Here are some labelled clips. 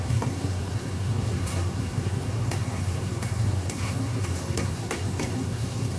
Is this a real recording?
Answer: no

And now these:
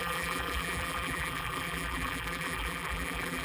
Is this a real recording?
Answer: no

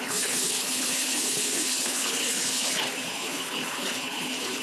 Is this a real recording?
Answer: no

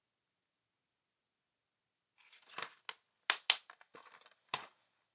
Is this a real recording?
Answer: yes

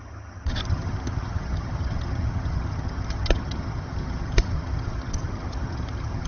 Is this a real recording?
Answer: no